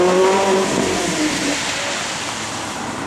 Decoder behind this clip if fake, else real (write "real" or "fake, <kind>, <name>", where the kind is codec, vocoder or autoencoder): fake, vocoder, BigVGAN v2